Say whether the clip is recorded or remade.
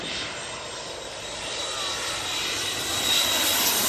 recorded